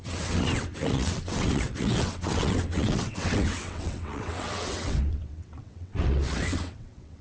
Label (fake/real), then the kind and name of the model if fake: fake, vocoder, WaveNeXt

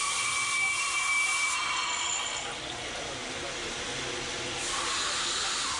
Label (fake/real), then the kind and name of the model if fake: real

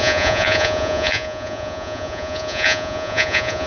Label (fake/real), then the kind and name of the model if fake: fake, vocoder, Vocos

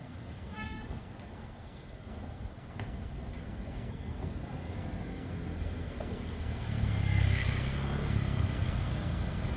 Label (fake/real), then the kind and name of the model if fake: fake, codec, SNAC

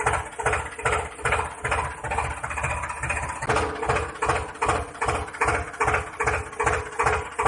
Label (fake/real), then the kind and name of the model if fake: real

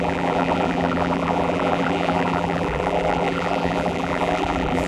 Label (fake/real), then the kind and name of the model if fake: fake, vocoder, BigVGAN v2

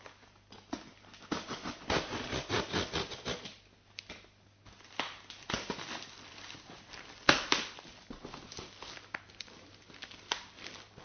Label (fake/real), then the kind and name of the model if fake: real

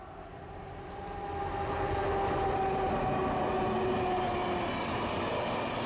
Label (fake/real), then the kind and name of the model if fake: real